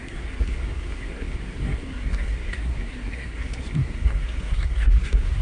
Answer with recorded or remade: remade